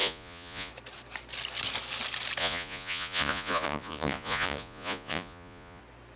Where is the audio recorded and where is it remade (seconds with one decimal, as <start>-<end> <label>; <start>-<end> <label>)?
0.0-0.7 remade; 0.7-2.4 recorded; 2.4-5.8 remade; 5.8-6.2 recorded